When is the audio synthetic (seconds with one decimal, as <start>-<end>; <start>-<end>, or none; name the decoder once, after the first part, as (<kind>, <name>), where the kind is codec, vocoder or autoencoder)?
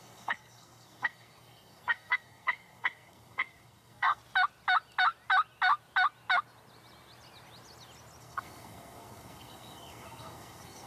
0.0-4.2 (codec, SNAC); 8.2-10.9